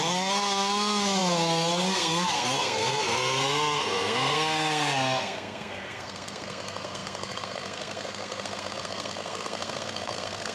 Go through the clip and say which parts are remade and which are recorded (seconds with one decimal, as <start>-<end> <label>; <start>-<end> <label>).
0.0-10.5 remade